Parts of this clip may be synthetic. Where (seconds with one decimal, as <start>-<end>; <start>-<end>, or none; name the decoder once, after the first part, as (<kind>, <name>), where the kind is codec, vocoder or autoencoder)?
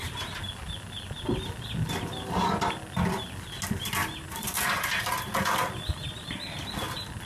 4.0-5.1 (vocoder, BigVGAN v2); 5.9-6.4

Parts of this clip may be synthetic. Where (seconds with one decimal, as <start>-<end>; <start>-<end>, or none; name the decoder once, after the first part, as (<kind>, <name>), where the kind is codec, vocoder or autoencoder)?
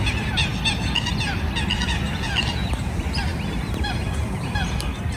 none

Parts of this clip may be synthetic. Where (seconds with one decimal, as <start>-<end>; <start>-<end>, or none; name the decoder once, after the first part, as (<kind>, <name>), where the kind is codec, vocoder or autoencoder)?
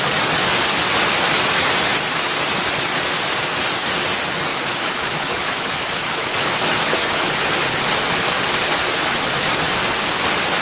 4.5-7.3 (autoencoder, DAC-VAE)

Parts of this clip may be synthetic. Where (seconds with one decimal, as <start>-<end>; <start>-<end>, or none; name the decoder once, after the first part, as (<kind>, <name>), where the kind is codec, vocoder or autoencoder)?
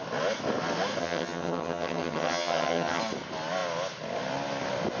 1.0-3.0 (vocoder, HiFi-GAN)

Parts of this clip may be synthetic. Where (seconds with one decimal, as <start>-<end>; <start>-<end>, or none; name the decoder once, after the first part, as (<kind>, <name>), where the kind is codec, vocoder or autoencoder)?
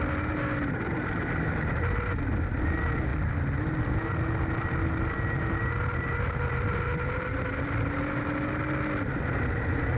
none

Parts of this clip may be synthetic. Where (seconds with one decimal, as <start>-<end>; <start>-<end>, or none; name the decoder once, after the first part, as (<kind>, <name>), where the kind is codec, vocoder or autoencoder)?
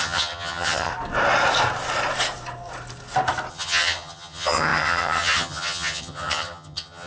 0.0-0.9 (vocoder, HiFi-GAN); 3.5-7.1